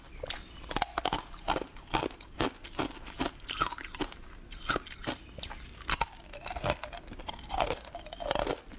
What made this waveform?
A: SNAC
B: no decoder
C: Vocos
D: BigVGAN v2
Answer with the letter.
B